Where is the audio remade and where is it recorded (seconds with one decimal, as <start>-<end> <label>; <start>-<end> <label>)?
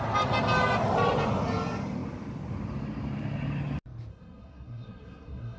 0.0-4.1 recorded; 4.1-5.6 remade